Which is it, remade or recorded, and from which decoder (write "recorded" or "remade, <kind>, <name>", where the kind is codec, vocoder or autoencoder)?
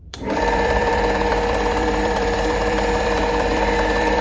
remade, vocoder, BigVGAN v2